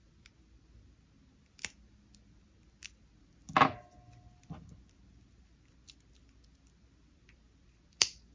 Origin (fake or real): real